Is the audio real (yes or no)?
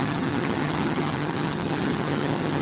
no